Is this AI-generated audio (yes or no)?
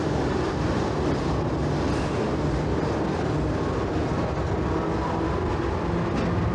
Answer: no